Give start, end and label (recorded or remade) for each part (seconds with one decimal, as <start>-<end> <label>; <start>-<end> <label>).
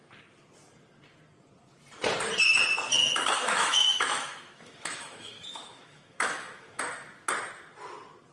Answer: 0.0-3.0 recorded; 3.0-6.8 remade; 6.8-8.3 recorded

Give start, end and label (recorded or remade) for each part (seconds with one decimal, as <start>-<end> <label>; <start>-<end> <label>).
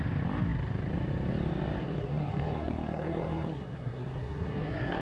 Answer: 0.0-1.8 recorded; 1.8-5.0 remade